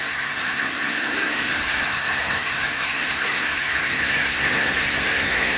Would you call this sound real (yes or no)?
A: no